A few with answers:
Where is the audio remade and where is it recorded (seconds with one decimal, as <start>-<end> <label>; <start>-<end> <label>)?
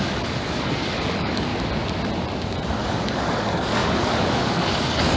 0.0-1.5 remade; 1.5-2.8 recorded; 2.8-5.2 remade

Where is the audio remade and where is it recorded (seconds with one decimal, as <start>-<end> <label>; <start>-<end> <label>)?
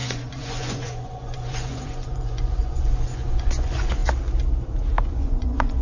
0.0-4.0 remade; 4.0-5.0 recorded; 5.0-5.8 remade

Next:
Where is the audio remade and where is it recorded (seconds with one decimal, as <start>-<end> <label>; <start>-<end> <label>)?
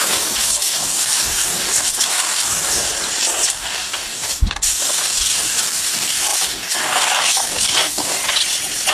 0.0-2.9 remade; 2.9-3.5 recorded; 3.5-8.2 remade; 8.2-8.9 recorded